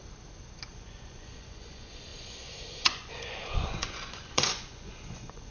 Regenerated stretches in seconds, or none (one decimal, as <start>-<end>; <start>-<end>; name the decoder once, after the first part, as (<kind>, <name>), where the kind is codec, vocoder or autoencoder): 0.7-5.5 (vocoder, Vocos)